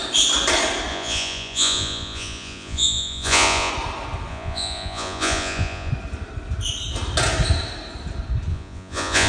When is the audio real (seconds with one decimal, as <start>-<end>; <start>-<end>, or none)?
0.0-0.9; 3.7-4.3; 5.9-8.5

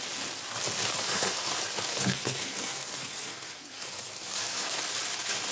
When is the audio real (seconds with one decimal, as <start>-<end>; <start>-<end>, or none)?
0.0-0.9; 1.5-1.9; 4.8-5.5

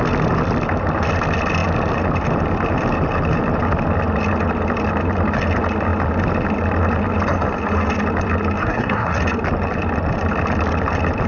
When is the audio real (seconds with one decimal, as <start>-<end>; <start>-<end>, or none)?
0.0-8.6; 9.2-11.3